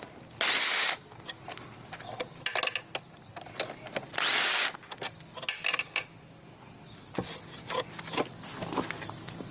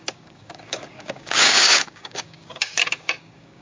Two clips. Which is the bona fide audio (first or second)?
first